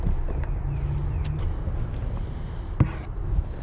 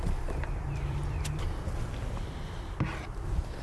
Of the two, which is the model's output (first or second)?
second